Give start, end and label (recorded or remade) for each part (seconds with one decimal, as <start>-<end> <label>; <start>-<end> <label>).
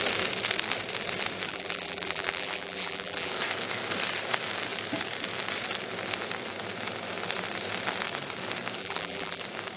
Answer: 0.0-1.5 recorded; 1.5-3.3 remade; 3.3-8.8 recorded; 8.8-9.4 remade; 9.4-9.8 recorded